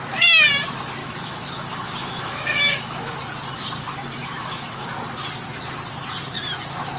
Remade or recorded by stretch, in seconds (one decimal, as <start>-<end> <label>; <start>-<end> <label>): 0.0-1.0 recorded; 1.0-3.1 remade; 3.1-4.2 recorded; 4.2-4.9 remade; 4.9-7.0 recorded